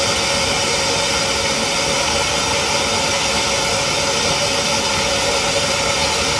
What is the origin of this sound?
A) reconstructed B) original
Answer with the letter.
B